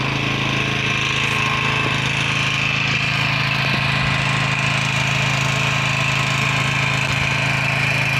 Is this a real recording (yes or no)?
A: yes